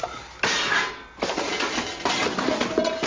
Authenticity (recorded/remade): recorded